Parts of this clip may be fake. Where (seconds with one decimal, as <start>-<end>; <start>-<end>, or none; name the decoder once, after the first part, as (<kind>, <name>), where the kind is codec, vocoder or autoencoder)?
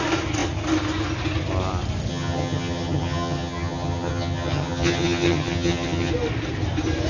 2.1-6.1 (vocoder, HiFi-GAN)